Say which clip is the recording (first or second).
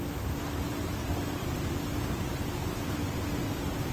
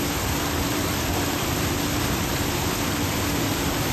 first